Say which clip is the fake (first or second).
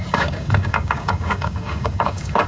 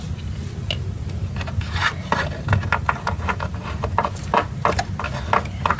first